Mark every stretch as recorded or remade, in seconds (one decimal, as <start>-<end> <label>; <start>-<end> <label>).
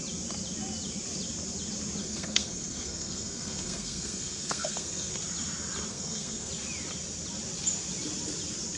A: 0.0-2.0 recorded; 2.0-5.1 remade; 5.1-5.9 recorded; 5.9-6.5 remade; 6.5-8.8 recorded